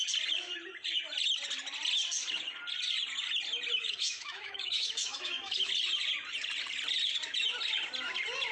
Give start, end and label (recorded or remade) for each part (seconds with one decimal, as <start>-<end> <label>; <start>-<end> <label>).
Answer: 0.0-3.8 recorded; 3.8-5.7 remade; 5.7-8.5 recorded

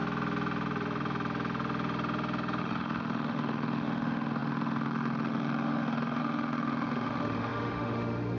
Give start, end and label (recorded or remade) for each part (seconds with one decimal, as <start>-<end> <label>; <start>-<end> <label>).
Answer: 0.0-2.6 recorded; 2.6-8.4 remade

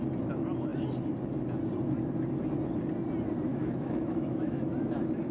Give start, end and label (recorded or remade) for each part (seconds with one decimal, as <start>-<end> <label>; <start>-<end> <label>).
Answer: 0.0-3.5 recorded; 3.5-4.7 remade; 4.7-5.3 recorded